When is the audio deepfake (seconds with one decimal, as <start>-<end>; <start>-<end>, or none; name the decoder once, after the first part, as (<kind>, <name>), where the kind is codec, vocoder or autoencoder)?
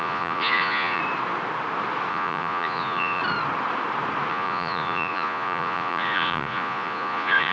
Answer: 0.0-1.0 (vocoder, Vocos); 2.1-3.2; 4.3-7.5